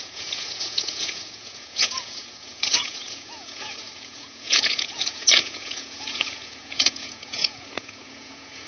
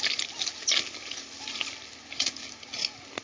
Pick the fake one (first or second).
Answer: first